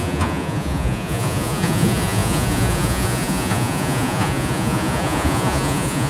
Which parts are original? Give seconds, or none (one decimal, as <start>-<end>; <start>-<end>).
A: none